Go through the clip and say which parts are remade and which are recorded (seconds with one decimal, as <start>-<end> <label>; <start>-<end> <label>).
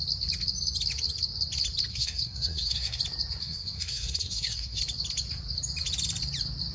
0.0-1.9 recorded; 1.9-3.0 remade; 3.0-3.4 recorded; 3.4-4.8 remade; 4.8-6.7 recorded